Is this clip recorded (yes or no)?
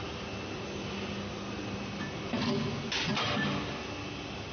yes